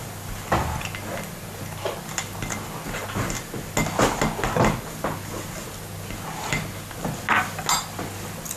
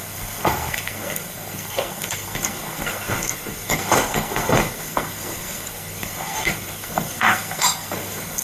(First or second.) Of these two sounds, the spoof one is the second